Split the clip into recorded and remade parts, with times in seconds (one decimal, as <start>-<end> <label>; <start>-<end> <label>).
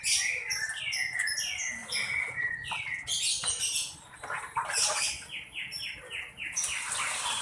0.0-7.4 recorded